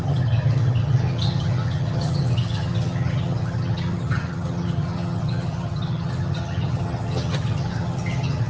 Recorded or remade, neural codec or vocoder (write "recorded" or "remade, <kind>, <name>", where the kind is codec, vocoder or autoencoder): remade, vocoder, HiFi-GAN